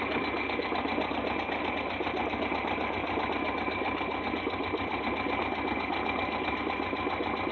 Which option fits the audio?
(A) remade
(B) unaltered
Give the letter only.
B